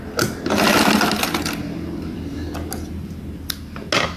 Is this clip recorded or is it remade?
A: recorded